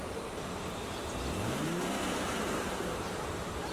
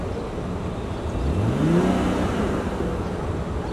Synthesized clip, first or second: first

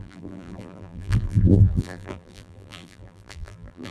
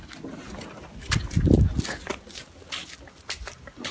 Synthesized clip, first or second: first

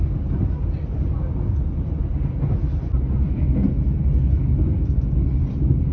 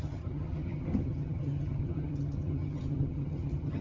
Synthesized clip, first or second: second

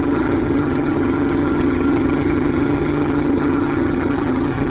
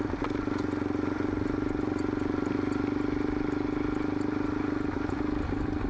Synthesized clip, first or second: first